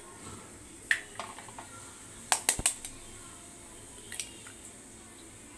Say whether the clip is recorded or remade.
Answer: recorded